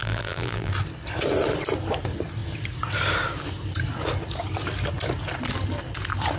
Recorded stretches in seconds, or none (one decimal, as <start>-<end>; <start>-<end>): 0.7-6.4